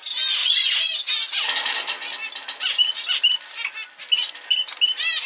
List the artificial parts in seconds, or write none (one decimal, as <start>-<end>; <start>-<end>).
0.4-1.1